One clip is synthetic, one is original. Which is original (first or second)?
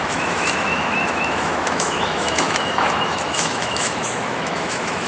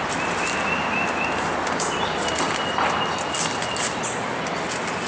second